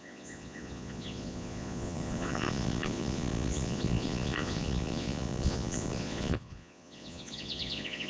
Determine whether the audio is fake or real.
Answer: fake